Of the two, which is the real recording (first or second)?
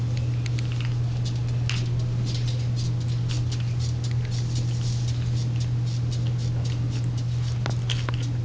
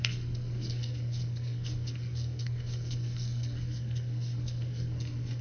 first